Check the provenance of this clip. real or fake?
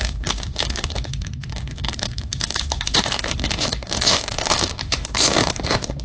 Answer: fake